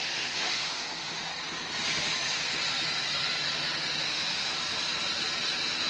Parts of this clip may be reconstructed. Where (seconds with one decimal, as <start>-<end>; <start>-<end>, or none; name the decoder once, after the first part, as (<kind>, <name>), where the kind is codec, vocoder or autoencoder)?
0.0-1.3 (autoencoder, DAC-VAE); 4.0-4.5